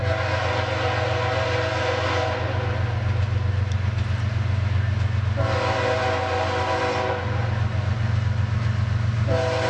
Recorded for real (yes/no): yes